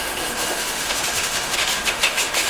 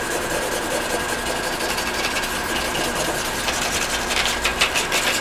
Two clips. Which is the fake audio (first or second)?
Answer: first